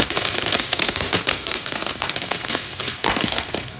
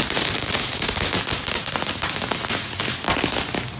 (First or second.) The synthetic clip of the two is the first